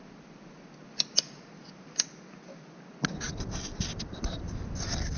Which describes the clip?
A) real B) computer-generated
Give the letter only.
A